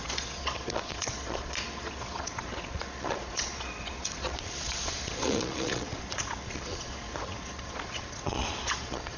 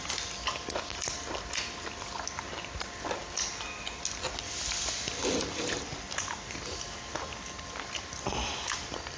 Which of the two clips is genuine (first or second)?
second